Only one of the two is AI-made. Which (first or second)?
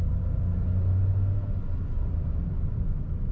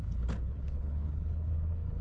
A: second